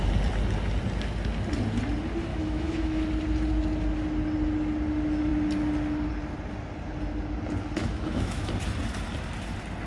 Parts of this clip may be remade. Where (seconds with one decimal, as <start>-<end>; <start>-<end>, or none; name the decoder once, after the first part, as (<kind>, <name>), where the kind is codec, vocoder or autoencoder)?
2.3-3.0 (autoencoder, DAC-VAE); 7.8-8.5